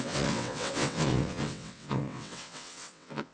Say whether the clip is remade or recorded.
remade